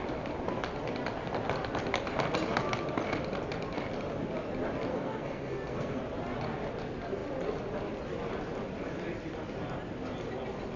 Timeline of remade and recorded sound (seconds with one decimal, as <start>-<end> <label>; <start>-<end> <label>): 0.0-4.9 recorded; 4.9-6.0 remade; 6.0-10.8 recorded